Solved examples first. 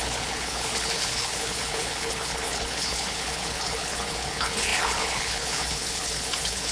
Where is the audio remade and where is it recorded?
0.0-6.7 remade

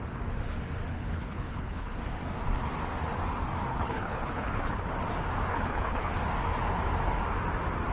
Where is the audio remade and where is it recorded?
0.0-0.9 recorded; 0.9-2.0 remade; 2.0-3.7 recorded; 3.7-4.9 remade; 4.9-5.5 recorded; 5.5-6.1 remade; 6.1-7.9 recorded

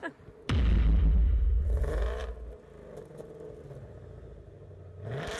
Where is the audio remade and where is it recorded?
0.0-5.4 recorded

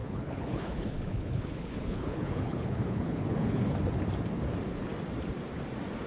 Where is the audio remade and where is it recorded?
0.0-3.7 remade; 3.7-6.1 recorded

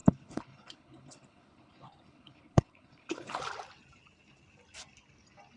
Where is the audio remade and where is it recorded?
0.0-3.4 remade; 3.4-5.6 recorded

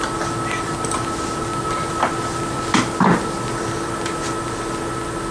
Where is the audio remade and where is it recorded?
0.0-5.3 recorded

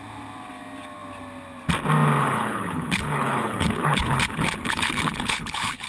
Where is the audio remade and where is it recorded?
0.0-2.2 recorded; 2.2-5.9 remade